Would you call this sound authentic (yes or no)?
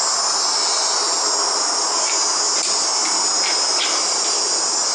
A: yes